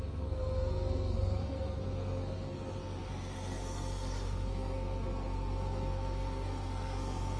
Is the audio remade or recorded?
remade